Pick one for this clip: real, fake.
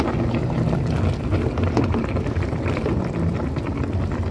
real